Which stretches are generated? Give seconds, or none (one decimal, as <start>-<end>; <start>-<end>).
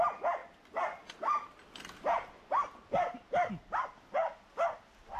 none